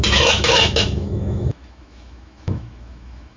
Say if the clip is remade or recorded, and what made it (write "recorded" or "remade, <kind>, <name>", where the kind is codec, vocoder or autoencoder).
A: remade, autoencoder, DAC-VAE